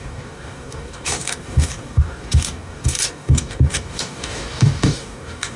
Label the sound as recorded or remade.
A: remade